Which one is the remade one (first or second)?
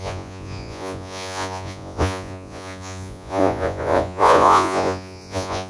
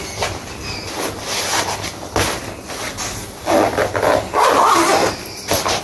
first